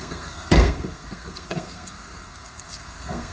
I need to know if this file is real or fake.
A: fake